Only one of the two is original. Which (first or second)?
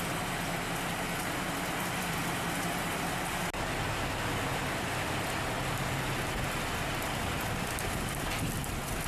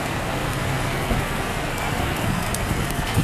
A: first